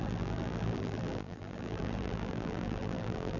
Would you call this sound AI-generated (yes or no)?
yes